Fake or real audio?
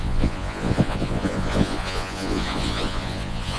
fake